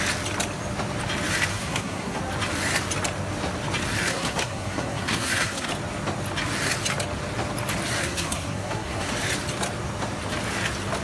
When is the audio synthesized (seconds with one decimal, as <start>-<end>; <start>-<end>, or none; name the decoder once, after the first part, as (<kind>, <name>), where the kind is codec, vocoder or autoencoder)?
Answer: 1.5-2.2 (codec, SNAC); 4.1-5.7; 8.0-9.1